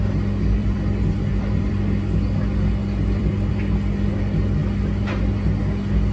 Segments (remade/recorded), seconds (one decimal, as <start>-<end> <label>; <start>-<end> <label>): 0.0-0.6 recorded; 0.6-1.7 remade; 1.7-2.8 recorded; 2.8-3.5 remade; 3.5-6.1 recorded